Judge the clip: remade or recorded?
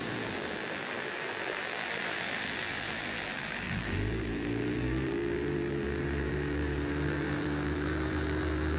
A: remade